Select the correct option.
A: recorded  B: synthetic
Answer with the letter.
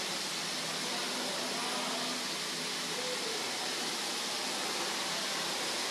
A